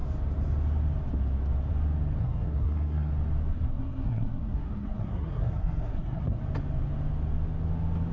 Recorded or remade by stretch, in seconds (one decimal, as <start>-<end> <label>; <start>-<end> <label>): 0.0-2.2 recorded; 2.2-3.1 remade; 3.1-3.5 recorded; 3.5-6.4 remade; 6.4-8.1 recorded